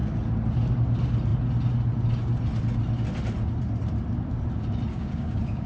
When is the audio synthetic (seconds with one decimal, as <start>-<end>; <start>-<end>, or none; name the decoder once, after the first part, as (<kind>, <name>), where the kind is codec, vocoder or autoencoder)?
4.9-5.7 (codec, DAC)